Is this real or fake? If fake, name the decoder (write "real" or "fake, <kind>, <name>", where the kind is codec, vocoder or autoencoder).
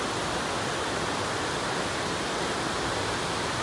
real